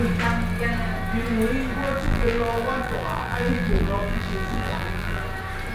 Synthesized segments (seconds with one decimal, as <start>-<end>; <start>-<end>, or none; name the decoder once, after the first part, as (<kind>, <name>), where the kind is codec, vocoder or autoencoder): 1.8-5.2 (vocoder, BigVGAN v2)

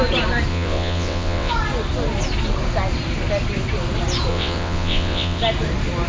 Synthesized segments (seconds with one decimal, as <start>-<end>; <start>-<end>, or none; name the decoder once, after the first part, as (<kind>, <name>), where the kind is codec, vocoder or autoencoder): 0.5-1.5 (vocoder, WaveNeXt); 4.3-5.4

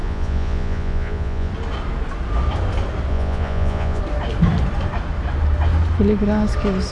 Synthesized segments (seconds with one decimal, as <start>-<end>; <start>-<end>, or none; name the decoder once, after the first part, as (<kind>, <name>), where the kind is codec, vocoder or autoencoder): 0.0-1.5 (vocoder, Vocos); 3.1-4.0

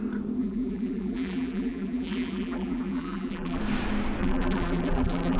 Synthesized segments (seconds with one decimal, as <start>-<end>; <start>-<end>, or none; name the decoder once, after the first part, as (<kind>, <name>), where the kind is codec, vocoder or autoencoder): 0.4-3.6 (vocoder, BigVGAN v2); 4.2-5.4

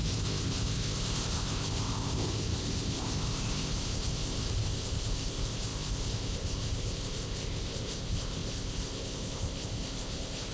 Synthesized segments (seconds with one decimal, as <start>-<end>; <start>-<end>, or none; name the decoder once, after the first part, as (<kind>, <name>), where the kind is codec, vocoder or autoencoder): 0.0-10.5 (codec, ZipCodec)

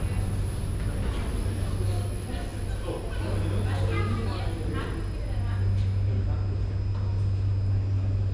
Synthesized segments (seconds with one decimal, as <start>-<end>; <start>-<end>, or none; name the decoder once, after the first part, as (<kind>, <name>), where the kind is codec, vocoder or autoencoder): none

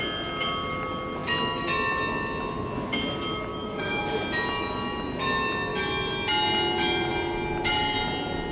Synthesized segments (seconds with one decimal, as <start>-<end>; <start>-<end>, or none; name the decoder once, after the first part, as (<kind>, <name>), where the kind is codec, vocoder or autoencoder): 3.5-4.0 (autoencoder, DAC-VAE)